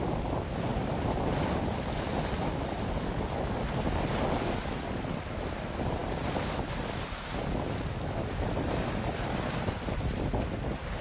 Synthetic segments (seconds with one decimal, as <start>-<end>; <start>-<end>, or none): 0.7-2.8